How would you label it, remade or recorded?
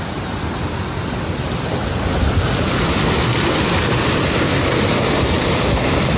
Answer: recorded